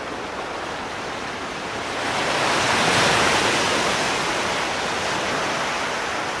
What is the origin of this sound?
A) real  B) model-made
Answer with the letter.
A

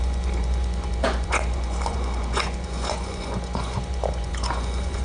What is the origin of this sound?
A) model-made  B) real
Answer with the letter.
A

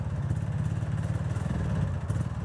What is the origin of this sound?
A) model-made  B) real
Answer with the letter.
B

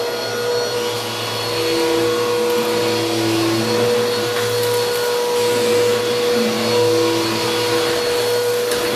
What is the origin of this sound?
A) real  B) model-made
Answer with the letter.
A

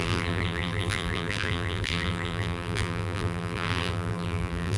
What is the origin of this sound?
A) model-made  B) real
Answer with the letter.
A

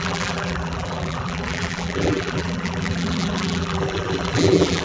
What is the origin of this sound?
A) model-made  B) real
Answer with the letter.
A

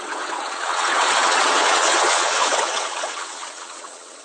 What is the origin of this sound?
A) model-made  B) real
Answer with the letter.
A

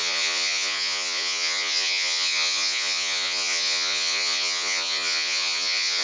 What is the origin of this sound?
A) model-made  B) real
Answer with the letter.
A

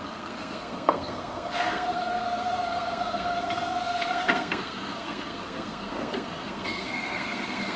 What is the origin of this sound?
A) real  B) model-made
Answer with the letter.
B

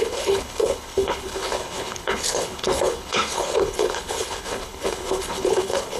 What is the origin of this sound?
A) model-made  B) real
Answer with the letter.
A